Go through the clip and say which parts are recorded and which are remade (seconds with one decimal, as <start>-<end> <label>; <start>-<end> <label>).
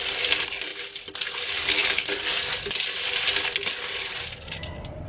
0.0-5.1 recorded